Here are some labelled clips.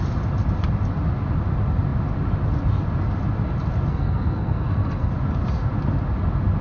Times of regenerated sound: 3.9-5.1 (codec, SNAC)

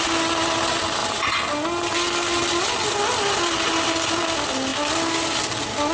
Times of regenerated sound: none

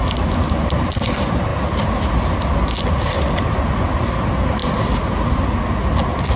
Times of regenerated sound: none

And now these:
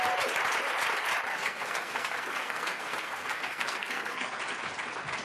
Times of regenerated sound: 1.3-4.4 (codec, SNAC)

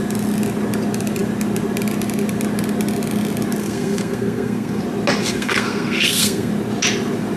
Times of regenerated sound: 3.6-4.8 (codec, SNAC); 5.2-6.5